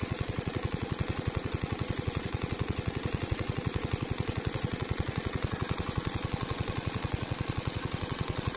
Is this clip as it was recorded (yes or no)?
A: no